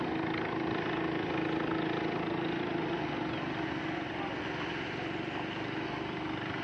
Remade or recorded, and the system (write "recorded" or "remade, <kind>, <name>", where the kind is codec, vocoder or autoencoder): recorded